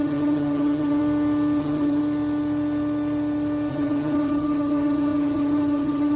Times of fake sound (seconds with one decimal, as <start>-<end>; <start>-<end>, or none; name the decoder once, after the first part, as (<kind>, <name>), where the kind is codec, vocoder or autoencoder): 0.0-1.0 (vocoder, HiFi-GAN); 1.6-2.0; 3.7-6.2

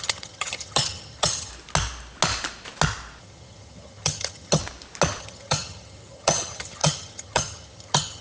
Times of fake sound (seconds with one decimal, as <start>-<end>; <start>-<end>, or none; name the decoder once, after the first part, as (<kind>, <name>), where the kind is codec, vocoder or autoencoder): 0.0-1.5 (vocoder, HiFi-GAN); 3.2-4.6; 5.2-8.2

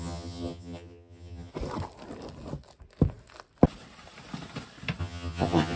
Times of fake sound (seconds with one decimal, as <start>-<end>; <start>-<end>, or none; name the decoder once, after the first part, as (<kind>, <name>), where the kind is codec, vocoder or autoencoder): 0.0-1.5 (vocoder, HiFi-GAN); 5.0-5.8

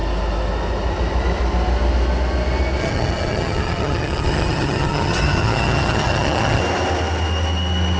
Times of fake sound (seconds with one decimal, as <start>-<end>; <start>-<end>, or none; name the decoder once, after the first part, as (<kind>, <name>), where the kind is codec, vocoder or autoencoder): 2.8-6.6 (vocoder, HiFi-GAN)

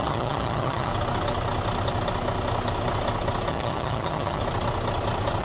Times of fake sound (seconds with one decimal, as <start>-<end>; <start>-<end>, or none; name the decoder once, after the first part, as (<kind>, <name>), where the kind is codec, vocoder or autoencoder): 0.0-0.9 (vocoder, HiFi-GAN); 3.5-4.4